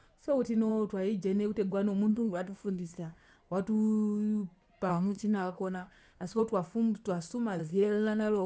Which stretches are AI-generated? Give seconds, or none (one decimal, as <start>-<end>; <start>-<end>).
2.1-3.4; 4.9-6.4; 7.6-8.5